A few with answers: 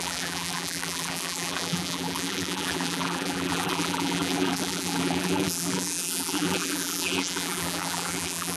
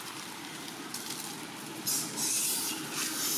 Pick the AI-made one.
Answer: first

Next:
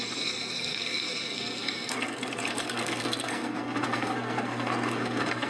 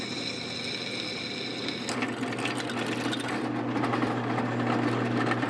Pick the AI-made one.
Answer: first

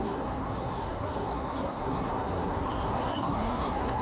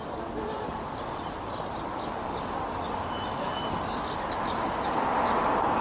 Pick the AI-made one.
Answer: first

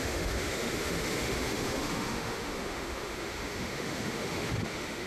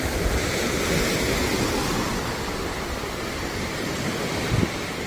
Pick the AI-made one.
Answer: first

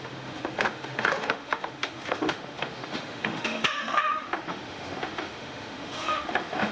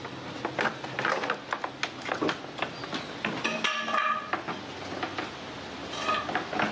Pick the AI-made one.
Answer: first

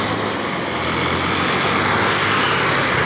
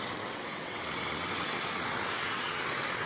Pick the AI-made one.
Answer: second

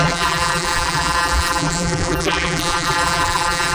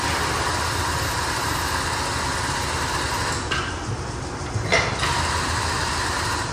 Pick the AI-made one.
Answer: first